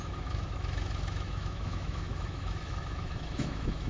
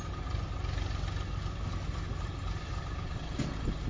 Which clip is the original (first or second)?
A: second